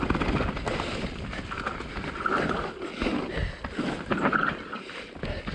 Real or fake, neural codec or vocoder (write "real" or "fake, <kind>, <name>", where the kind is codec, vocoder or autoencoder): real